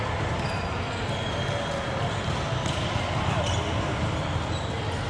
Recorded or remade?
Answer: recorded